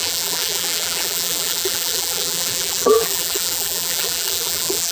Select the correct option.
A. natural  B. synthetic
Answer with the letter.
B